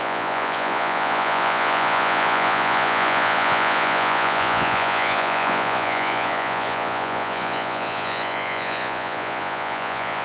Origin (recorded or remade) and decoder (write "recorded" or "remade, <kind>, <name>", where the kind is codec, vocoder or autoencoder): remade, vocoder, Vocos